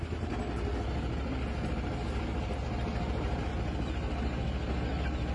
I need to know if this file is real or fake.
real